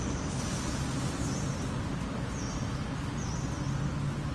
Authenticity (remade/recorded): recorded